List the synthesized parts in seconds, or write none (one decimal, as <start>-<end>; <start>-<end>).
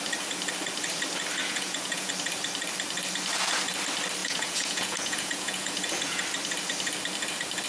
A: 1.4-2.1; 4.2-6.2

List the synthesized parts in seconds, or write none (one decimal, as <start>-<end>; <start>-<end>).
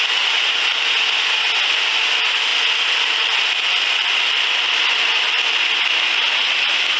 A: none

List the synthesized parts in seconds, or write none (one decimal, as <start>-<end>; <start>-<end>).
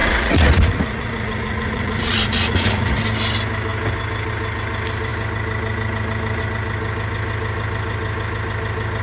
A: 0.0-3.0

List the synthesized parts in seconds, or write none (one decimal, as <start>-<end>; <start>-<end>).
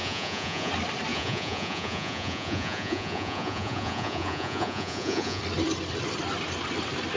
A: 0.0-0.7; 1.1-5.4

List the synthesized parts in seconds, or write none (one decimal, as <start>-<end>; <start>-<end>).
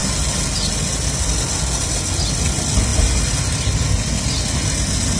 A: none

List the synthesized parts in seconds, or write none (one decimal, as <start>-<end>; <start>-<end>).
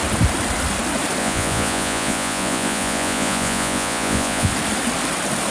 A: 1.2-4.5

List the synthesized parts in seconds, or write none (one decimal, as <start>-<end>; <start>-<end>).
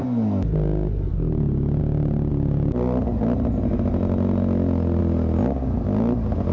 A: none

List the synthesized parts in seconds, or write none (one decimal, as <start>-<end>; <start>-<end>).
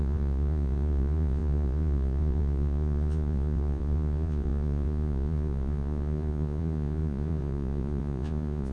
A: 0.0-8.7